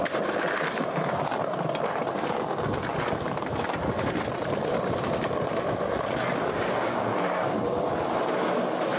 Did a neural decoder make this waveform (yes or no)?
no